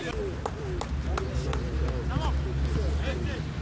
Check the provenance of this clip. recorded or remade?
recorded